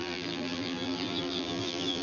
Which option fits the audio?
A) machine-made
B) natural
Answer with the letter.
A